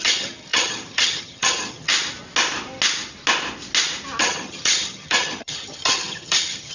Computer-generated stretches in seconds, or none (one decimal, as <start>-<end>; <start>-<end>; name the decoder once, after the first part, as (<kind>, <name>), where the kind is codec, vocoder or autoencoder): 0.0-1.9 (vocoder, HiFi-GAN); 4.2-6.7